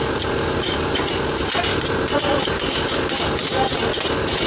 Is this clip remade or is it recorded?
recorded